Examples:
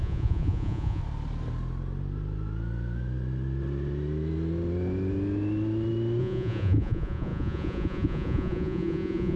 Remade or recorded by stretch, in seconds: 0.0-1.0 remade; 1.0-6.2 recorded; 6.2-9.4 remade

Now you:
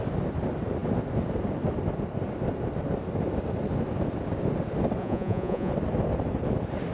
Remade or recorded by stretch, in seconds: 0.0-5.0 recorded; 5.0-5.7 remade; 5.7-6.9 recorded

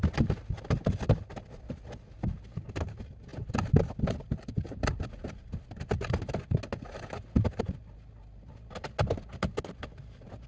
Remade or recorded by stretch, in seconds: 0.0-10.5 recorded

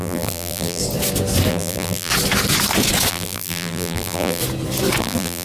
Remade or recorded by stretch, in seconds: 0.0-0.8 remade; 0.8-1.5 recorded; 1.5-2.1 remade; 2.1-3.1 recorded; 3.1-4.4 remade; 4.4-5.0 recorded; 5.0-5.4 remade